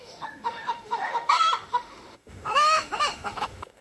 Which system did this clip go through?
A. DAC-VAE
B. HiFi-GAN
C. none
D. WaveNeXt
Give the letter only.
A